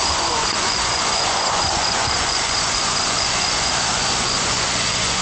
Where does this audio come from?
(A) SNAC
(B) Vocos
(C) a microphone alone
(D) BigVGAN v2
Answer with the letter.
B